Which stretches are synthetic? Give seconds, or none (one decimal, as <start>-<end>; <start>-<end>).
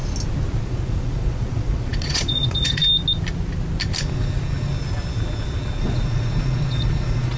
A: 0.6-2.8; 5.8-7.4